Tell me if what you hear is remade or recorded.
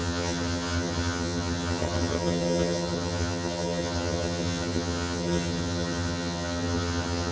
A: remade